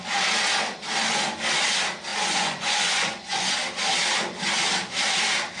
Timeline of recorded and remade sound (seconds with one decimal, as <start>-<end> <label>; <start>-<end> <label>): 0.0-2.1 recorded; 2.1-3.5 remade; 3.5-5.6 recorded